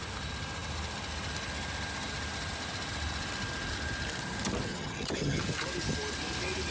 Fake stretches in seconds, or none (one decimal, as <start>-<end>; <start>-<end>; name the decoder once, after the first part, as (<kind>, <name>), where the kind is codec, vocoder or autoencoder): 4.7-5.4 (vocoder, HiFi-GAN)